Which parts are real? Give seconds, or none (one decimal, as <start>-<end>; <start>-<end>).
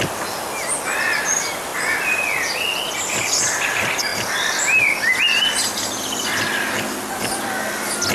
0.0-8.1